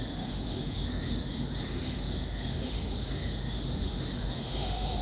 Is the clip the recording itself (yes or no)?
no